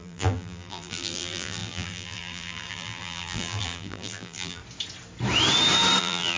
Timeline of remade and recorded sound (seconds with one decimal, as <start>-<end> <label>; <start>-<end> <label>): 0.0-4.6 remade; 4.6-6.0 recorded; 6.0-6.4 remade